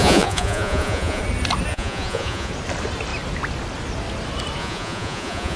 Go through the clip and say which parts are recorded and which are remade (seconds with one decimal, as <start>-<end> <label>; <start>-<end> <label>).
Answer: 0.0-1.2 remade; 1.2-1.7 recorded; 1.7-2.5 remade; 2.5-4.6 recorded; 4.6-5.6 remade